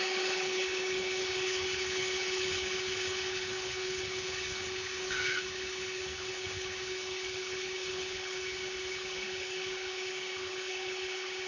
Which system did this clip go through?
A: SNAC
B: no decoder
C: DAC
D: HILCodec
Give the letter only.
D